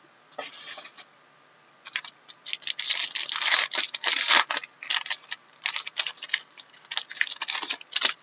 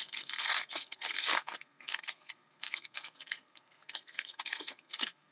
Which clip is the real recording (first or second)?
first